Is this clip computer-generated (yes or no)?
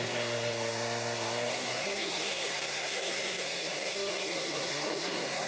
yes